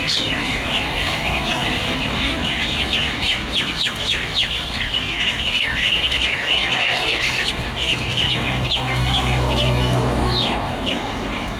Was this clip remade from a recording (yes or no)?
yes